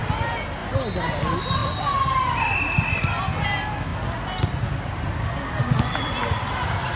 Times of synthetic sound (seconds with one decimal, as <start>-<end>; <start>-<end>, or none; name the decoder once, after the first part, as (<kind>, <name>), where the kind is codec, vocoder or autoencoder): none